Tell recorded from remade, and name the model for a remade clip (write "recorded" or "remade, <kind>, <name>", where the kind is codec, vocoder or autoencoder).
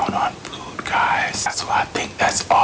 recorded